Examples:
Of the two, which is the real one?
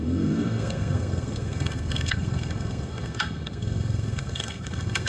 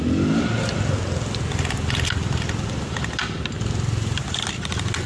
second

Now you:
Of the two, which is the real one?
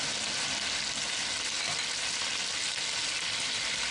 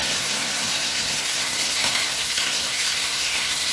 first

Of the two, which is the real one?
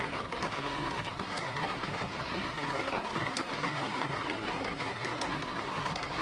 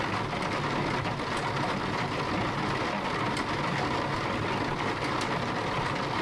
second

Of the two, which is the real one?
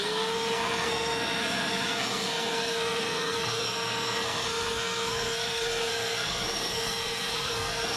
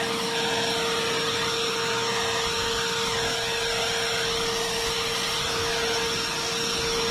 second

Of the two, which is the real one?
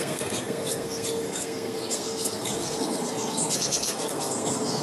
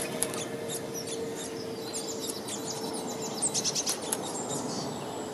second